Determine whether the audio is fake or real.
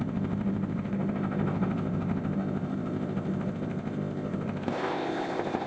fake